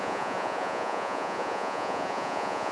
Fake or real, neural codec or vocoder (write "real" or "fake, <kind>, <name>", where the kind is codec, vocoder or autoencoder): fake, vocoder, Vocos